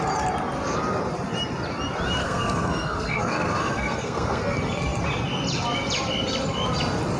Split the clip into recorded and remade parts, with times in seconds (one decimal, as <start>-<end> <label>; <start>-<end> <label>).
0.0-2.2 recorded; 2.2-4.4 remade; 4.4-7.2 recorded

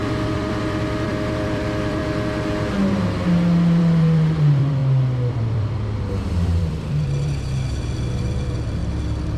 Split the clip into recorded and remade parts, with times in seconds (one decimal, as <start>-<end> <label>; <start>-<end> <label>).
0.0-2.0 remade; 2.0-3.8 recorded; 3.8-4.8 remade; 4.8-5.3 recorded; 5.3-8.8 remade; 8.8-9.4 recorded

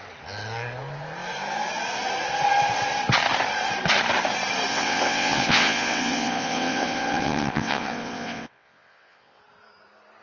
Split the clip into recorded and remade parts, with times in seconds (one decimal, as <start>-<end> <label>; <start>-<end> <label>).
0.0-4.7 recorded; 4.7-9.4 remade; 9.4-10.2 recorded

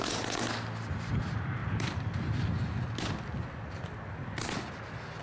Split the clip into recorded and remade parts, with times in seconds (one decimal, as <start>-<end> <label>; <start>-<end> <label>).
0.0-5.2 recorded

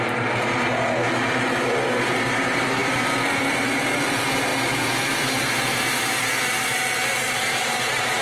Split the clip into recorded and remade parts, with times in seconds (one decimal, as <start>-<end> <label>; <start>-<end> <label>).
0.0-8.2 recorded

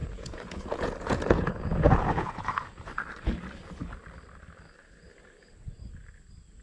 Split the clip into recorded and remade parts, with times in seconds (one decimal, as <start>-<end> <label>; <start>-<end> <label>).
0.0-2.8 remade; 2.8-6.6 recorded